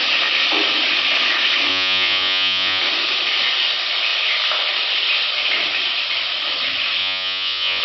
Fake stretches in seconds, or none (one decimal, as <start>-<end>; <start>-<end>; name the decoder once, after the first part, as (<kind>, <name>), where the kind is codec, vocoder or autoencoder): 1.7-2.8 (vocoder, Vocos); 7.0-7.8